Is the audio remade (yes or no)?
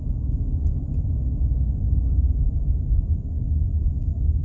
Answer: no